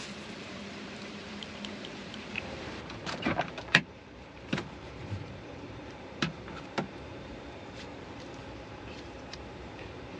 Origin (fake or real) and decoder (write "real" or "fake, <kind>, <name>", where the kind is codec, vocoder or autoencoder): fake, vocoder, BigVGAN v2